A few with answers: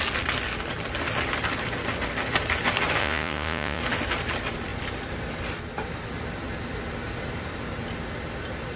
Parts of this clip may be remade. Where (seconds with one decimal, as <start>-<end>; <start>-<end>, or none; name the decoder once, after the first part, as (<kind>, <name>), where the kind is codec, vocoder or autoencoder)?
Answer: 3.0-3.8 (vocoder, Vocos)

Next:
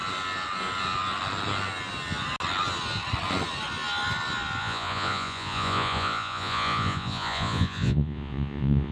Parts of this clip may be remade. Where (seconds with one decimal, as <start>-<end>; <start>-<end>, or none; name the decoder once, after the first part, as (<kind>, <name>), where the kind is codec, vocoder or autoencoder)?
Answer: 4.6-8.9 (vocoder, Vocos)

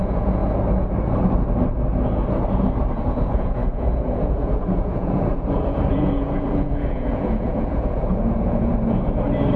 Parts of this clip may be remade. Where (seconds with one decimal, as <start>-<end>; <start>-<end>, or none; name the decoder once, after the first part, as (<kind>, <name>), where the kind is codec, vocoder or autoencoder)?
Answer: 0.0-0.4 (vocoder, Vocos); 3.1-8.7

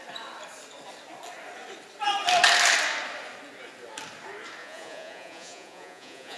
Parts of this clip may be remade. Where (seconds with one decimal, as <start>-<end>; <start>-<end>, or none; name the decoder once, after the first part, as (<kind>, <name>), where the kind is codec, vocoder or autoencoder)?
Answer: 4.6-6.4 (vocoder, Vocos)

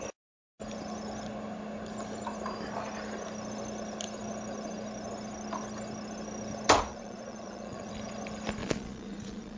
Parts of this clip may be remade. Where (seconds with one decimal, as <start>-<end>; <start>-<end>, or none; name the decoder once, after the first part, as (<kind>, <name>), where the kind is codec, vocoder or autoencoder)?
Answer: 6.9-7.9 (vocoder, Vocos); 8.6-9.6